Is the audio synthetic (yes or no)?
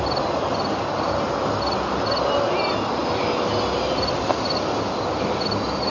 no